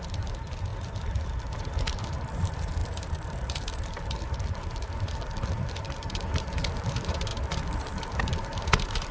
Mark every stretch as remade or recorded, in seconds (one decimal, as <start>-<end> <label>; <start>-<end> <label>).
0.0-9.1 remade